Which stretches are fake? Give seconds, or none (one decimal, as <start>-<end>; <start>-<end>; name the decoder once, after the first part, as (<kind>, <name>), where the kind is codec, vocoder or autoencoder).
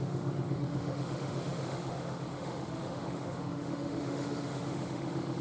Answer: 0.0-5.4 (autoencoder, DAC-VAE)